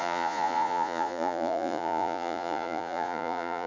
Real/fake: fake